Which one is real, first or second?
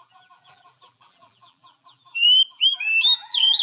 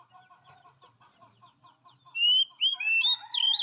second